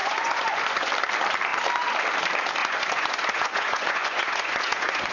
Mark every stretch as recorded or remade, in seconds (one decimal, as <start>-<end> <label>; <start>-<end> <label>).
0.0-0.9 remade; 0.9-2.6 recorded; 2.6-5.1 remade